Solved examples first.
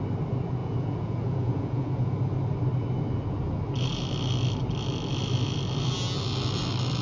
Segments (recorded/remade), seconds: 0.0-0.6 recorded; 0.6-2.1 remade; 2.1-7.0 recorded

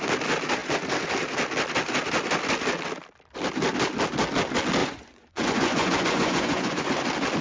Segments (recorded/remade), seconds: 0.0-4.8 recorded; 4.8-6.9 remade; 6.9-7.4 recorded

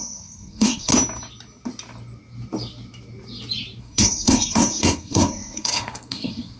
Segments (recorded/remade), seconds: 0.0-0.9 remade; 0.9-3.8 recorded; 3.8-6.6 remade